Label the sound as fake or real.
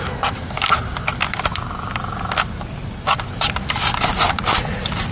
real